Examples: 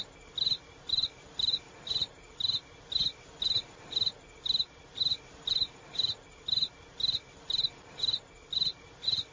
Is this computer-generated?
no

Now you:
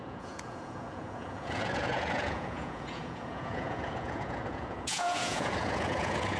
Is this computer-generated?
yes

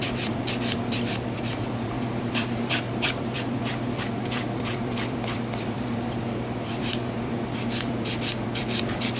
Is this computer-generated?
yes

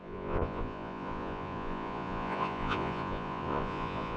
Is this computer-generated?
yes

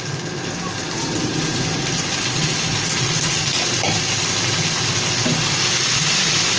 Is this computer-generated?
no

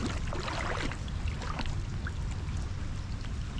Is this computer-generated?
no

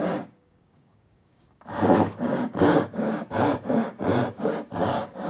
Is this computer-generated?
yes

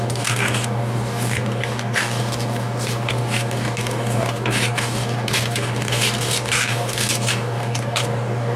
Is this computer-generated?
yes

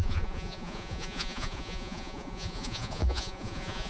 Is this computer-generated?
yes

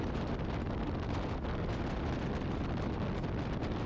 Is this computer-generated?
no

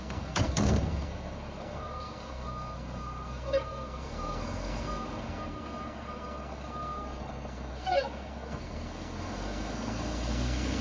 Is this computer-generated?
yes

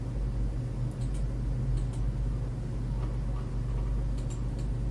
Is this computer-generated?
no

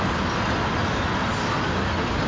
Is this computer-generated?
no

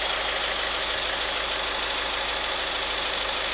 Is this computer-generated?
no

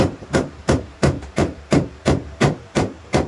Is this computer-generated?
yes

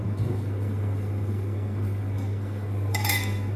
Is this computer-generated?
yes